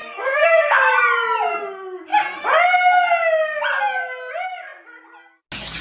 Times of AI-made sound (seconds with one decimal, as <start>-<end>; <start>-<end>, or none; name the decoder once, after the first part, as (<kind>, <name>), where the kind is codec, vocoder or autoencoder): 0.0-0.9 (codec, SNAC)